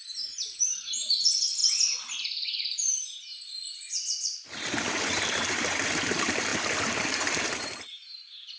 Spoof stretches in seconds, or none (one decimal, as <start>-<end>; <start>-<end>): 0.0-8.6